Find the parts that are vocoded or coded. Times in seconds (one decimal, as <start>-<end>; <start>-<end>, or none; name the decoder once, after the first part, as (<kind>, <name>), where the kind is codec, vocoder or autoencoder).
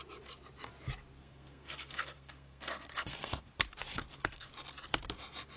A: 1.2-3.5 (codec, SNAC); 3.9-4.5